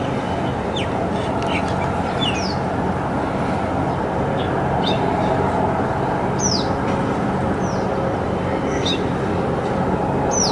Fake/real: real